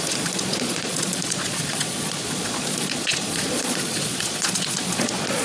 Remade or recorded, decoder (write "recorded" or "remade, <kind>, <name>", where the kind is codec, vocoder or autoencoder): remade, vocoder, Vocos